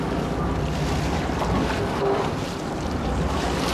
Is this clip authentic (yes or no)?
yes